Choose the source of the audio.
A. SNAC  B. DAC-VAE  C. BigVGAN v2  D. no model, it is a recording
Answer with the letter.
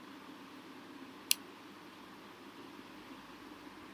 D